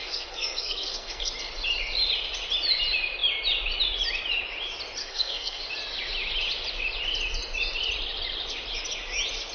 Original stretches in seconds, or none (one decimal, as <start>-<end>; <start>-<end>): 1.3-5.0; 5.6-9.5